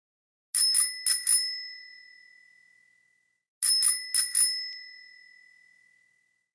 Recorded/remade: recorded